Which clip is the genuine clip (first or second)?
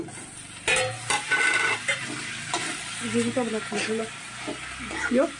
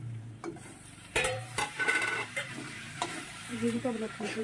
first